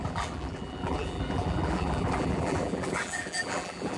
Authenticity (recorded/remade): remade